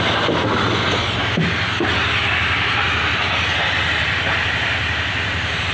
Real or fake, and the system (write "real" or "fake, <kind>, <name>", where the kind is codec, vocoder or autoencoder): fake, vocoder, BigVGAN v2